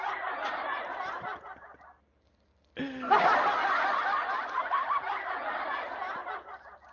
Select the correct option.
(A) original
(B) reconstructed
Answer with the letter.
A